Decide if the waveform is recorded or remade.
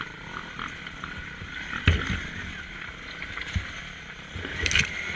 recorded